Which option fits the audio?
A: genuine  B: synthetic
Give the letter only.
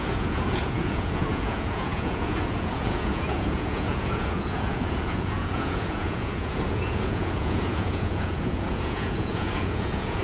B